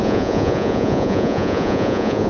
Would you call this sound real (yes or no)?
no